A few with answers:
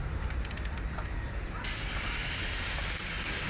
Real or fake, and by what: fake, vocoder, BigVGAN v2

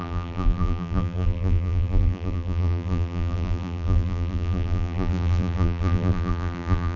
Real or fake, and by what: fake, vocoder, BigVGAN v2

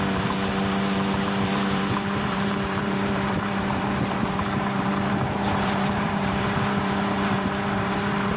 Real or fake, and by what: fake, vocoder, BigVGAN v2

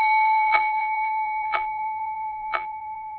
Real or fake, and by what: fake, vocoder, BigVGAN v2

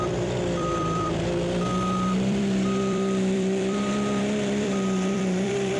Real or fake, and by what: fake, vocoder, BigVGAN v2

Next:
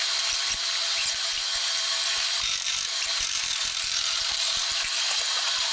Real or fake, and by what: fake, vocoder, BigVGAN v2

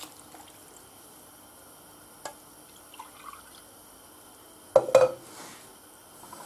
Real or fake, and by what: real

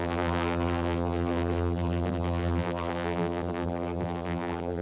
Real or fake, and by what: fake, vocoder, BigVGAN v2